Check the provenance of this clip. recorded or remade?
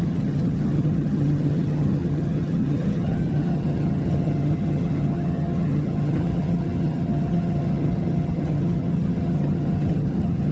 remade